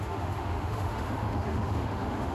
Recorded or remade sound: remade